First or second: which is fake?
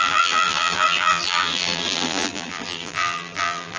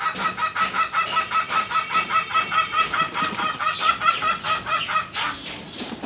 first